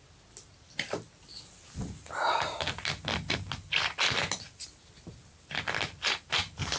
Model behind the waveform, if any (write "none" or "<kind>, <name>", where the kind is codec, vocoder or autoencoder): none